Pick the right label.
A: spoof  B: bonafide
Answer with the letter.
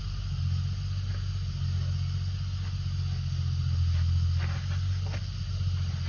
B